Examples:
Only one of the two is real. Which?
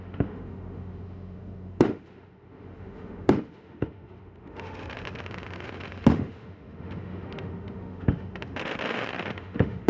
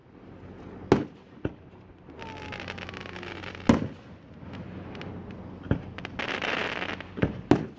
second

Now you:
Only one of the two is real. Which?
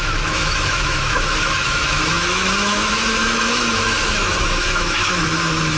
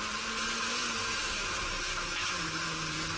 second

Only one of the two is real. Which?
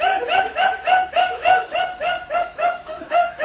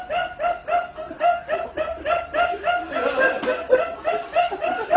second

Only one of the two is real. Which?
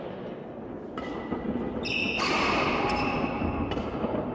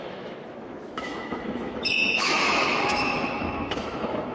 first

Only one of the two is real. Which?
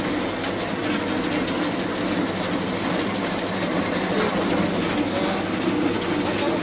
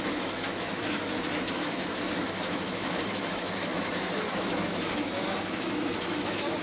first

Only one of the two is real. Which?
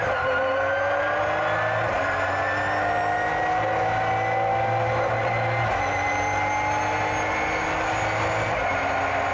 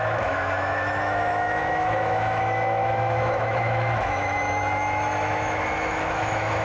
first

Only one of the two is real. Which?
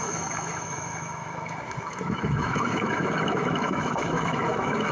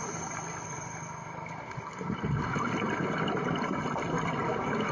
second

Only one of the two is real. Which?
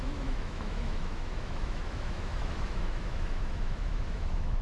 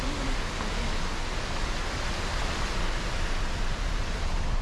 second